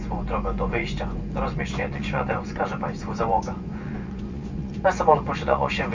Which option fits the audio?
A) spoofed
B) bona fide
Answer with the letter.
A